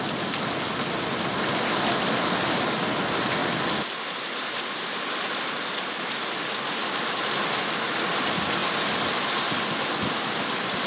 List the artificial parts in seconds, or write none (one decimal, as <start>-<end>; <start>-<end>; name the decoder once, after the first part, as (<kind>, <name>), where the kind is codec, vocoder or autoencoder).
none